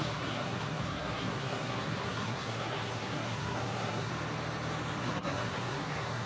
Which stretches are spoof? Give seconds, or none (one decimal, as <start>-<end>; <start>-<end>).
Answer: 0.0-4.1; 5.0-6.3